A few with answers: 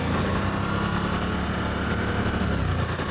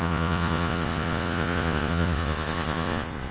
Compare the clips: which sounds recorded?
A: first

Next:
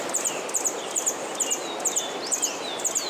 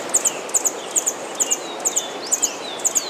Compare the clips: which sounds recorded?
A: second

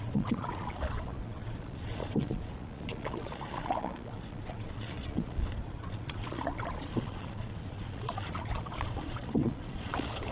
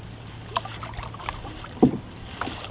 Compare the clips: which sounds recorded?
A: second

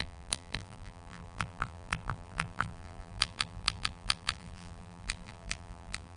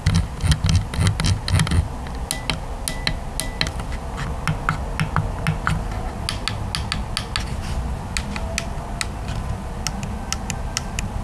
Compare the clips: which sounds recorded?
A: second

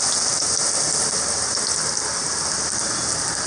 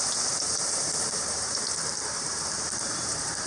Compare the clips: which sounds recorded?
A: first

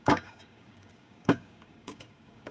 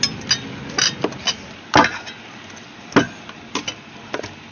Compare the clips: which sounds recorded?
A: second